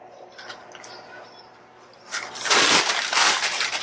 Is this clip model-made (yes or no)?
no